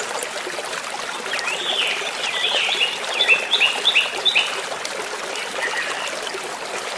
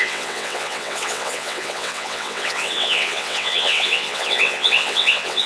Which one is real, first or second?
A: first